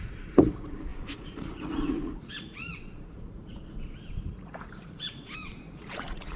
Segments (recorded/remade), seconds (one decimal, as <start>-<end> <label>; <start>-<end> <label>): 0.0-6.4 remade